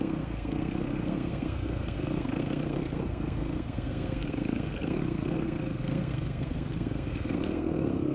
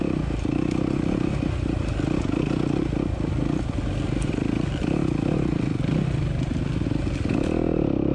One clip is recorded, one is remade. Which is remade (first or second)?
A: first